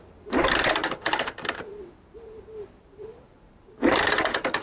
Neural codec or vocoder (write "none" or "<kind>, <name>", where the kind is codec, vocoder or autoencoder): vocoder, BigVGAN v2